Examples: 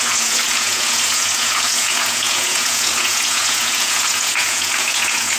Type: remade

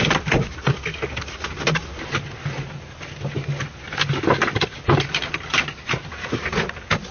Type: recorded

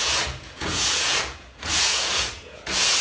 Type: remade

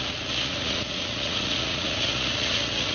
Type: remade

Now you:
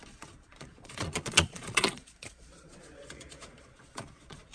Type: remade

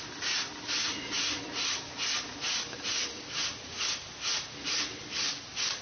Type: recorded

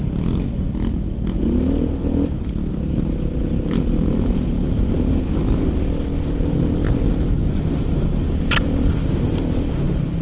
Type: recorded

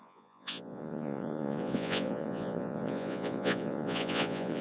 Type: remade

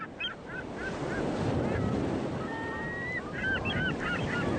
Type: recorded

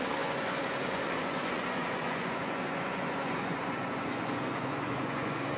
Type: remade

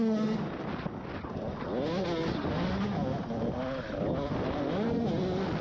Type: recorded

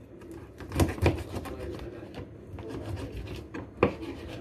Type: recorded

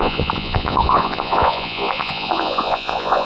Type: remade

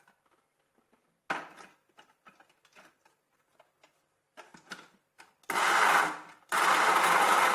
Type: recorded